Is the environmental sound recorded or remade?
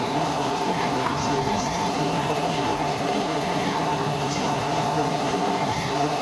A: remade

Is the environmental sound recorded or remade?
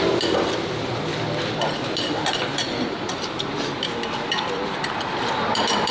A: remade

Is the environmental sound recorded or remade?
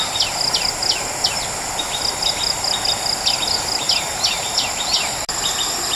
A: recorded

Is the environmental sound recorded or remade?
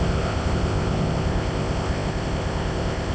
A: remade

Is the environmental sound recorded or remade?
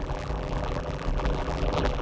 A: remade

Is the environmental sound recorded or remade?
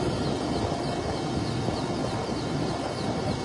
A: recorded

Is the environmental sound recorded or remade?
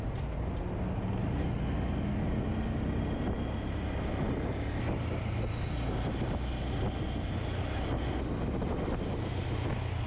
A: recorded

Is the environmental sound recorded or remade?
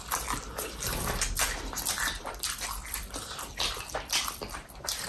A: remade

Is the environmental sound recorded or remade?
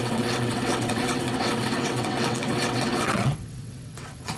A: remade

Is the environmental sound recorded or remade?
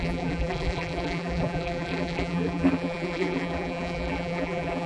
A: remade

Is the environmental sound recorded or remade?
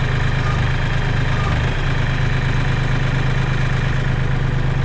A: recorded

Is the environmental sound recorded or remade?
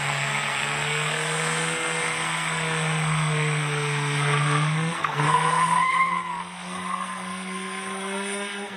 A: remade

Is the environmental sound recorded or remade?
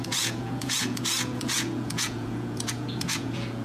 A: remade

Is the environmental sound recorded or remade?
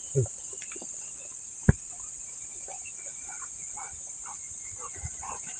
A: remade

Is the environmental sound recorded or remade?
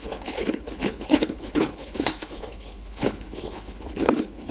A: remade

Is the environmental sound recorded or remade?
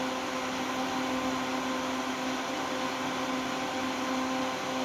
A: recorded